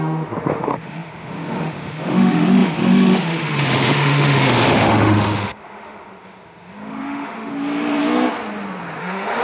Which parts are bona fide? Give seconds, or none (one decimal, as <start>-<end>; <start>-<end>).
7.5-9.0